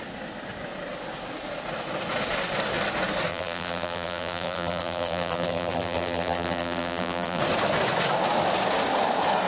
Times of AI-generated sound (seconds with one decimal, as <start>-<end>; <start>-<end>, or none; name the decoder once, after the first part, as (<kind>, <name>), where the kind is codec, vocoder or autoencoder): 3.3-7.4 (vocoder, BigVGAN v2)